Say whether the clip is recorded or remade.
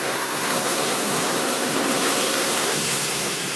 remade